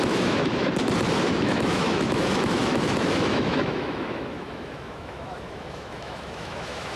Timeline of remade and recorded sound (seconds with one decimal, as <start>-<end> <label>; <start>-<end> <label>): 0.0-0.6 remade; 0.6-1.3 recorded; 1.3-7.0 remade